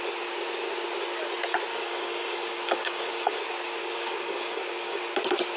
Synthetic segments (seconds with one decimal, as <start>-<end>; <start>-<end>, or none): 1.7-3.4; 3.8-5.0